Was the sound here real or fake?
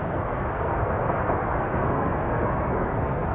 fake